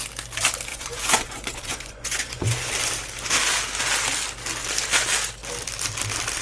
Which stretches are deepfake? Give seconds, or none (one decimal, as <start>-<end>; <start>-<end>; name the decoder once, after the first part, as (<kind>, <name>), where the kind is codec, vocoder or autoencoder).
0.7-2.7 (vocoder, Vocos)